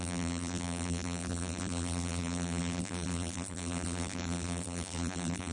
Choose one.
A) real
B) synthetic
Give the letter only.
B